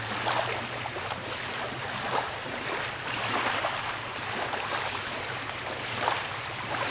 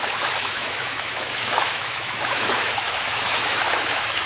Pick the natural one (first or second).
first